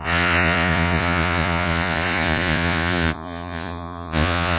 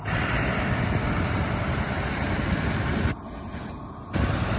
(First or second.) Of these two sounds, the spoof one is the first